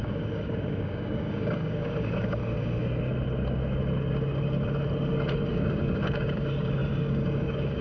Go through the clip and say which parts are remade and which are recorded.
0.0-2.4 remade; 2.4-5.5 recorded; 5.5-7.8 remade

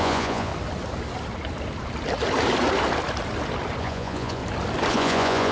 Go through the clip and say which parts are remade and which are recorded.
0.0-0.5 remade; 0.5-3.8 recorded; 3.8-4.4 remade; 4.4-4.9 recorded; 4.9-5.5 remade

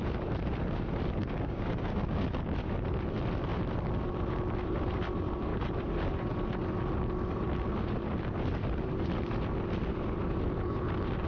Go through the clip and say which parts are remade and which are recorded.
0.0-1.2 recorded; 1.2-2.5 remade; 2.5-11.3 recorded

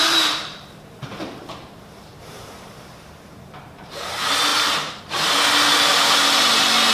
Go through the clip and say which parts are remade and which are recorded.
0.0-4.1 remade; 4.1-4.5 recorded; 4.5-5.0 remade; 5.0-6.9 recorded